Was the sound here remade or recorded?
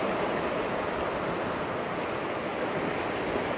recorded